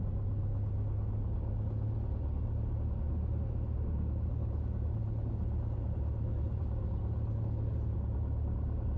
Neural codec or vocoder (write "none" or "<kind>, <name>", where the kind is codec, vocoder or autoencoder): none